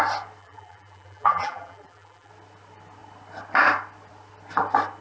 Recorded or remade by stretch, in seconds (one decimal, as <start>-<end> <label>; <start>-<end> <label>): 0.0-0.4 recorded; 0.4-2.3 remade; 2.3-5.0 recorded